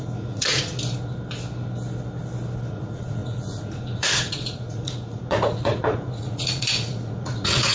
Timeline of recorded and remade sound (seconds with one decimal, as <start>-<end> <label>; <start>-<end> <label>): 0.0-0.7 remade; 0.7-2.7 recorded; 2.7-7.7 remade